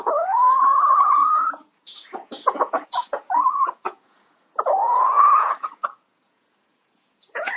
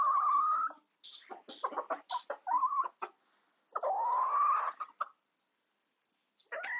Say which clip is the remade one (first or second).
first